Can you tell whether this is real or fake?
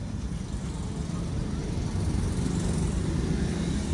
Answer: real